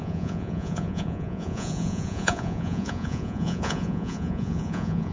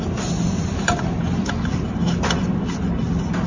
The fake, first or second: first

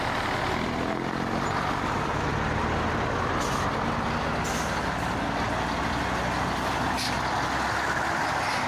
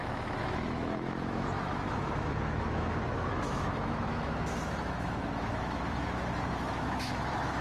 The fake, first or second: second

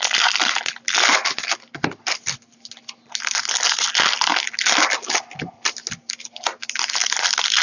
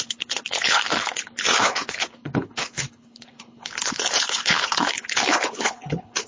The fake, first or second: second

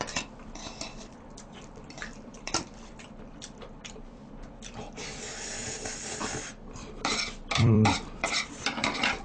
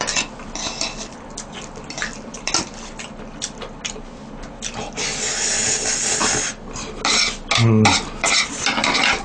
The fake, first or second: first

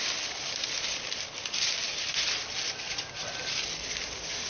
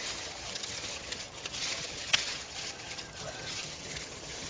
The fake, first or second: second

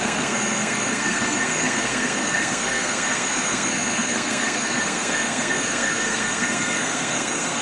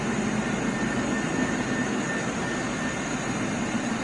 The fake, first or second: first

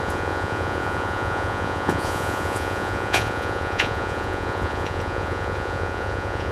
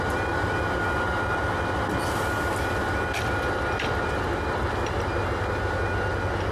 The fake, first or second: first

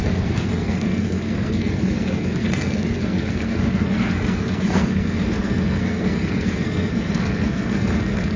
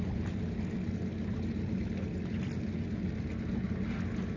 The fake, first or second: first